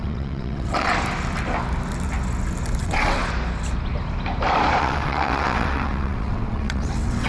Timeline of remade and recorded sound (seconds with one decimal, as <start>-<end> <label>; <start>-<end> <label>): 0.0-0.9 remade; 0.9-2.8 recorded; 2.8-3.2 remade; 3.2-4.8 recorded; 4.8-7.3 remade

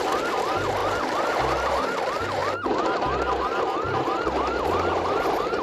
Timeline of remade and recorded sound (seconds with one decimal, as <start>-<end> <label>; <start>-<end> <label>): 0.0-5.6 recorded

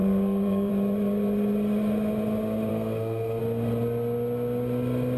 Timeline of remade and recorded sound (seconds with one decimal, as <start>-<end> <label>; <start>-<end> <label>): 0.0-0.7 remade; 0.7-2.7 recorded; 2.7-3.4 remade; 3.4-5.2 recorded

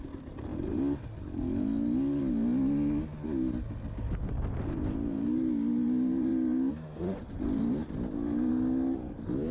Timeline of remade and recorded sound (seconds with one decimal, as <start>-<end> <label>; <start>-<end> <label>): 0.0-9.5 recorded

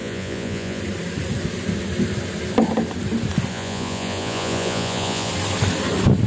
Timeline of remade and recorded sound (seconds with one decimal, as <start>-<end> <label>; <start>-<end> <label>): 0.0-0.8 remade; 0.8-3.5 recorded; 3.5-5.3 remade; 5.3-6.3 recorded